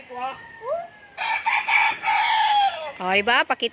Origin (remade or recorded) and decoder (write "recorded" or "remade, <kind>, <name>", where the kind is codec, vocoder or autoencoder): recorded